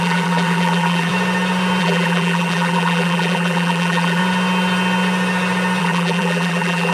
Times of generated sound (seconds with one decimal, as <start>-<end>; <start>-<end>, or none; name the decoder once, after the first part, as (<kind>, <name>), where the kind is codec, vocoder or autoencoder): 0.0-1.1 (vocoder, BigVGAN v2); 1.8-4.2; 5.8-6.9